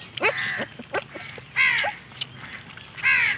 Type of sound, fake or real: real